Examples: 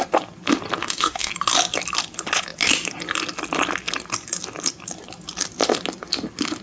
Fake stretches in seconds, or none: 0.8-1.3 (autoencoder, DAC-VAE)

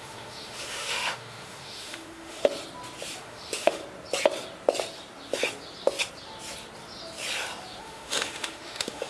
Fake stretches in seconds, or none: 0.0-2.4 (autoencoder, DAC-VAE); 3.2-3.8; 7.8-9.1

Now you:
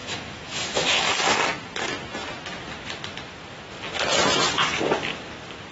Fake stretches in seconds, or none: 0.0-1.0 (autoencoder, DAC-VAE)

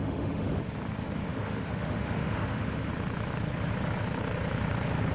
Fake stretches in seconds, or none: 0.0-0.6 (autoencoder, DAC-VAE); 1.3-2.9

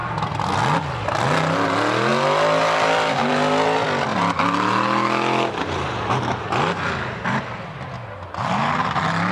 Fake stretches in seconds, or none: none